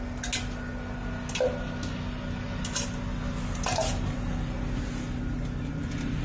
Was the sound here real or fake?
real